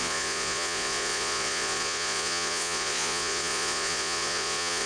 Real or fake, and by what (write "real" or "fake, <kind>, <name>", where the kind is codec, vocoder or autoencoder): fake, vocoder, Vocos